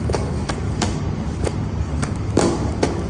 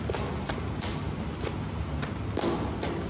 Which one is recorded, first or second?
second